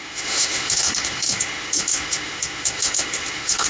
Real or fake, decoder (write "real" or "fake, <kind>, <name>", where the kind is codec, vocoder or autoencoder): fake, autoencoder, DAC-VAE